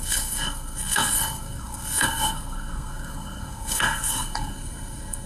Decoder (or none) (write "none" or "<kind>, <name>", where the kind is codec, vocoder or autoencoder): codec, SNAC